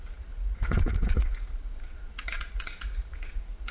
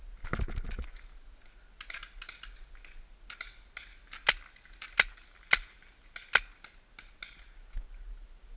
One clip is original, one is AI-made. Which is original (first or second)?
second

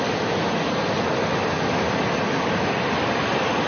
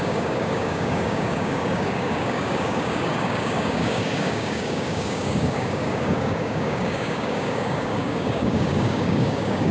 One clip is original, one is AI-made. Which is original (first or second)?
first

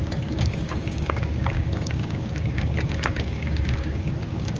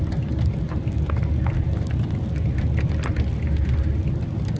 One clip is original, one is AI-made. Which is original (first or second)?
second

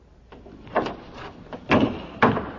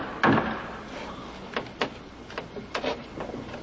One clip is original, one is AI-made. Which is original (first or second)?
second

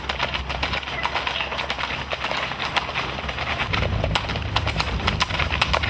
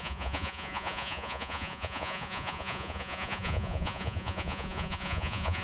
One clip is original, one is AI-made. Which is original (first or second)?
first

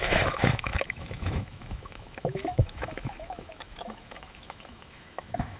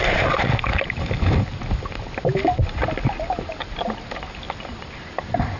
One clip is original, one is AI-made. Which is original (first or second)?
second